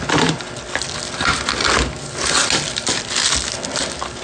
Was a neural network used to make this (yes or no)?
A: no